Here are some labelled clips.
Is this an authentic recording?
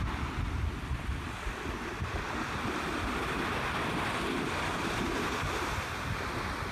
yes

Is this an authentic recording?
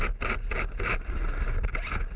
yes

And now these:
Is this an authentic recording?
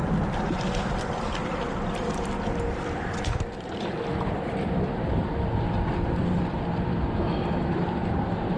no